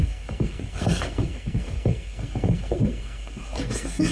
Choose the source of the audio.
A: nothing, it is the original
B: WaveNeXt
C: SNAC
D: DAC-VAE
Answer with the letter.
C